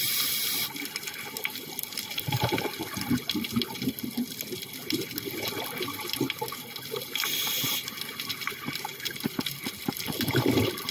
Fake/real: real